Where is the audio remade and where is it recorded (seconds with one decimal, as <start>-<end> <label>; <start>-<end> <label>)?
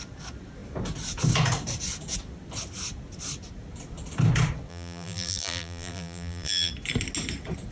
0.0-4.7 recorded; 4.7-6.7 remade; 6.7-7.7 recorded